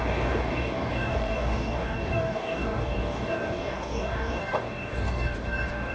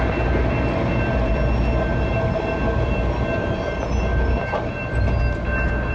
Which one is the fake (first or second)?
first